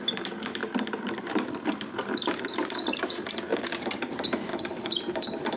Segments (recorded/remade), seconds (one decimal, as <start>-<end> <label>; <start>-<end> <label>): 0.0-4.5 recorded; 4.5-5.6 remade